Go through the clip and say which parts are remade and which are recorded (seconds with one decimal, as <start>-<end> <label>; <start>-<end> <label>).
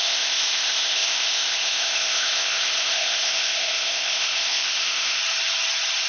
0.0-5.2 remade; 5.2-6.1 recorded